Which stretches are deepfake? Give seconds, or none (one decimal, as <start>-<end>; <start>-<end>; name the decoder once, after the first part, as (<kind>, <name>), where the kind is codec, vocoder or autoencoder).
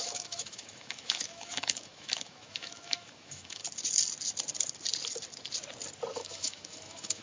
0.0-3.6 (autoencoder, DAC-VAE); 6.1-7.2